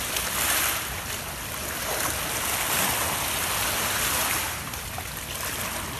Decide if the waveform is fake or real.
real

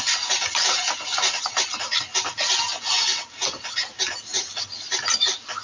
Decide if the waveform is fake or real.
real